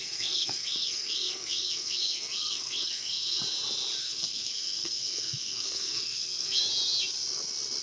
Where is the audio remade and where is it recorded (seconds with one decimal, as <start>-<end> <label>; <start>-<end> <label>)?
0.0-3.4 remade; 3.4-4.0 recorded; 4.0-6.6 remade; 6.6-7.8 recorded